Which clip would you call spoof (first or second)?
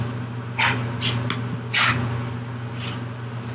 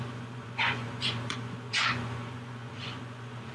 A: second